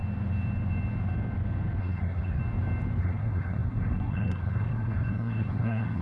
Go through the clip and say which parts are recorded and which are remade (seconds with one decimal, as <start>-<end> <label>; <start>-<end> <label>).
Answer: 0.0-1.8 recorded; 1.8-2.4 remade; 2.4-3.0 recorded; 3.0-6.0 remade